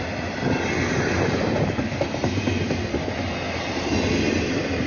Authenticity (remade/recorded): recorded